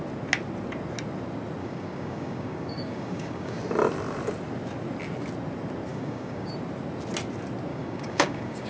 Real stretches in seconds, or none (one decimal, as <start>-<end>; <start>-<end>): 0.0-1.6; 3.6-5.9; 6.5-7.7

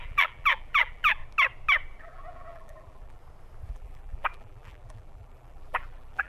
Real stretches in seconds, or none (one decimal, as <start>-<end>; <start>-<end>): 1.2-2.0; 3.2-3.7

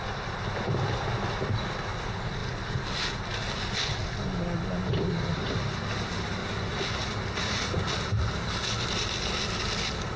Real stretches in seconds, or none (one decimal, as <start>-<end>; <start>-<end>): 0.0-10.2